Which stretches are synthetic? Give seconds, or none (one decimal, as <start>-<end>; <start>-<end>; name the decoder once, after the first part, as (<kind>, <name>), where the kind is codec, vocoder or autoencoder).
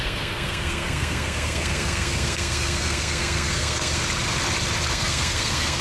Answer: 0.0-4.0 (codec, SNAC); 4.9-5.8